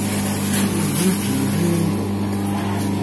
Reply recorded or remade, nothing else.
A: recorded